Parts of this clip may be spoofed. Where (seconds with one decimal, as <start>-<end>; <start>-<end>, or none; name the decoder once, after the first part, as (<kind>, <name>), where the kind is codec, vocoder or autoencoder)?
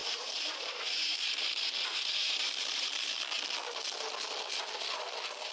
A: 0.0-3.2 (vocoder, BigVGAN v2)